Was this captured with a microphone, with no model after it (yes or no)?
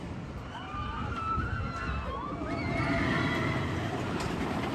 yes